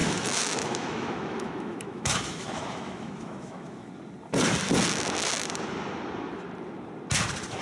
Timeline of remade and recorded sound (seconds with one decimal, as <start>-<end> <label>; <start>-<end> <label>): 0.0-3.9 remade; 3.9-7.6 recorded